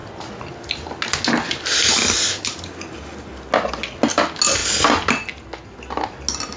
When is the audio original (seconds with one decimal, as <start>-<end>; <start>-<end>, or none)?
0.0-6.6